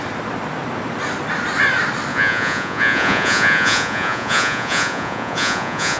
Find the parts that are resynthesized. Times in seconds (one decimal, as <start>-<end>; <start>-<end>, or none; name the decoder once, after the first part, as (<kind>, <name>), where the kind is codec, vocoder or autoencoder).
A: 2.1-6.0 (vocoder, Vocos)